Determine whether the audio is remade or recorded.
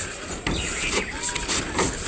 recorded